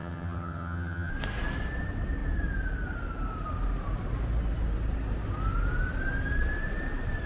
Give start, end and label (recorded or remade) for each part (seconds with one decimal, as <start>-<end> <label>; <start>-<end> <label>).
0.0-1.1 remade; 1.1-7.3 recorded